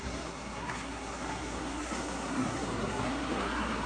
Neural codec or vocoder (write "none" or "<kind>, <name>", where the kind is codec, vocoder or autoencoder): codec, SNAC